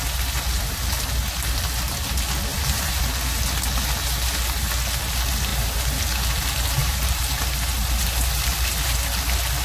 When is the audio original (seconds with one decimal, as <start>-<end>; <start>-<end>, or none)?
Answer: 0.0-2.5; 3.0-5.5; 6.0-6.8; 7.4-9.6